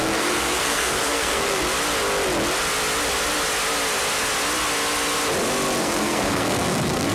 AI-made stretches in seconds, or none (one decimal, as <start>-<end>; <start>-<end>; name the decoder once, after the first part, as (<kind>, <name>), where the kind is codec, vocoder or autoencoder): 0.0-1.6 (codec, SNAC); 5.8-7.1